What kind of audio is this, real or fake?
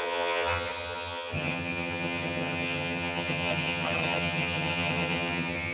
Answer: fake